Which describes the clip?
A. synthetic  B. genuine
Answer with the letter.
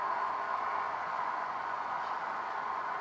A